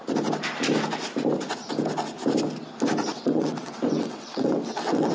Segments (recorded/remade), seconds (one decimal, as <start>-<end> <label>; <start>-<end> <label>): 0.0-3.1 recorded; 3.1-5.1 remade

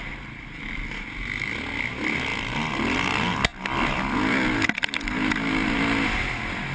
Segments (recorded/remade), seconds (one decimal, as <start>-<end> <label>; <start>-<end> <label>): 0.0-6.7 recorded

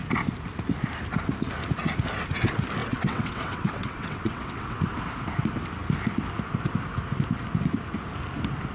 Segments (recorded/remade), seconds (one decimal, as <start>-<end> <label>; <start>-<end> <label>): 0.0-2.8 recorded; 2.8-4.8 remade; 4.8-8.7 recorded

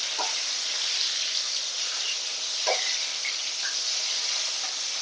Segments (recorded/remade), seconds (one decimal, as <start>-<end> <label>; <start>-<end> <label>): 0.0-5.0 recorded

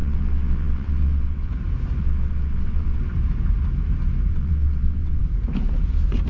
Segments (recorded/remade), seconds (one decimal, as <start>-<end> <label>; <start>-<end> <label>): 0.0-1.5 remade; 1.5-2.0 recorded; 2.0-3.0 remade; 3.0-4.3 recorded; 4.3-5.2 remade; 5.2-6.3 recorded

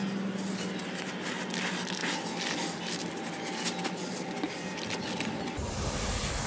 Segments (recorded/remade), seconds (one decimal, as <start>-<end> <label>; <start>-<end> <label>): 0.0-6.5 recorded

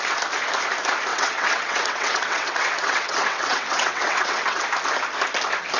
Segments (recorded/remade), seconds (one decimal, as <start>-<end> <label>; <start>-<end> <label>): 0.0-1.1 recorded; 1.1-4.6 remade; 4.6-5.8 recorded

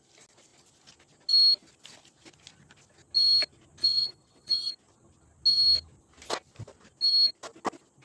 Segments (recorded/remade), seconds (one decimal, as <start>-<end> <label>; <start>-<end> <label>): 0.0-3.8 recorded; 3.8-4.6 remade; 4.6-8.0 recorded